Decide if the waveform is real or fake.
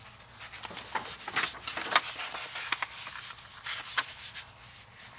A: real